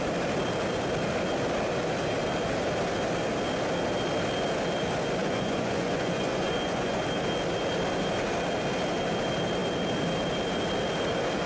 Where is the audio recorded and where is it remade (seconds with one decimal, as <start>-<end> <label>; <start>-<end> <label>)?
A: 0.0-5.2 recorded; 5.2-7.0 remade; 7.0-11.5 recorded